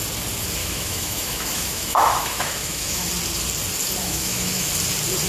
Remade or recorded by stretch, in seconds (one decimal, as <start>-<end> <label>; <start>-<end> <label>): 0.0-0.6 recorded; 0.6-3.1 remade; 3.1-4.0 recorded; 4.0-4.7 remade; 4.7-5.3 recorded